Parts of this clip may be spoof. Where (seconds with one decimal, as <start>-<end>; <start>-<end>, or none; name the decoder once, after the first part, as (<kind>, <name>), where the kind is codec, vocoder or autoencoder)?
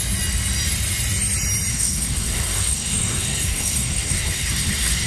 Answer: 1.7-5.1 (codec, SNAC)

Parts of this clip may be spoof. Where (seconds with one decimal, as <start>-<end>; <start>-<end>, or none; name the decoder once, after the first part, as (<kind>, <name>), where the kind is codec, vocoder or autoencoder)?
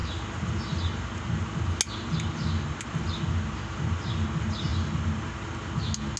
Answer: none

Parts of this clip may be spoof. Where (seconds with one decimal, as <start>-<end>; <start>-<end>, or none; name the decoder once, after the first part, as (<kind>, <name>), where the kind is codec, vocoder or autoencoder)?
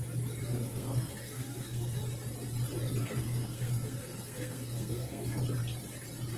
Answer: 0.4-2.0 (codec, SNAC); 3.0-5.4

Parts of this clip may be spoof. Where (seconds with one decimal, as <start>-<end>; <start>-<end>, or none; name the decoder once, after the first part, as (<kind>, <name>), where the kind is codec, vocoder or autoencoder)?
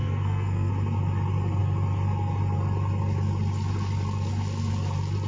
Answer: 0.0-0.7 (codec, SNAC)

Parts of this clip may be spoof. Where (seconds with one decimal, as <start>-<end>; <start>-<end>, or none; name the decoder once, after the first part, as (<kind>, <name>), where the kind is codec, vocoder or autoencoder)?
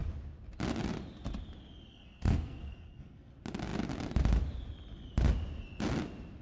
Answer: 1.9-3.3 (codec, SNAC)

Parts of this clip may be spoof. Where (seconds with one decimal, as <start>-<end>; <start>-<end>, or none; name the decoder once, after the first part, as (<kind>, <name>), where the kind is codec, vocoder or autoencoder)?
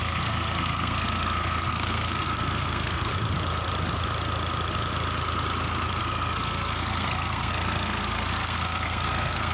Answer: 0.0-3.1 (codec, SNAC); 6.0-9.5